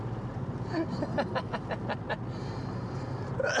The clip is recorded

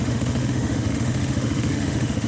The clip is remade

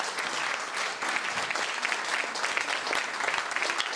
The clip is recorded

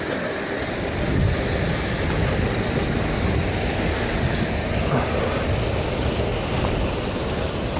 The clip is recorded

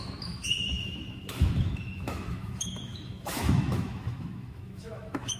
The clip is remade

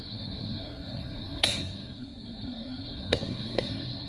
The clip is remade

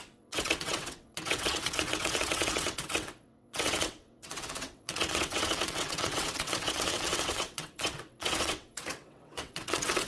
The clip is remade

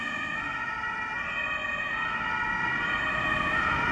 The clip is recorded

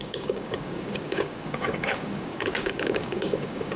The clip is remade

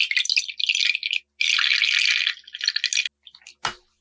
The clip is recorded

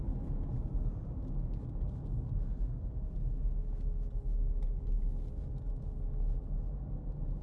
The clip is recorded